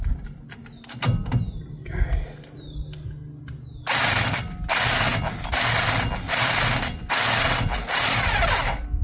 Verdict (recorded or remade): recorded